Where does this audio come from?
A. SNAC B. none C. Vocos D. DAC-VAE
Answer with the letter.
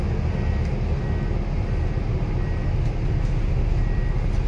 B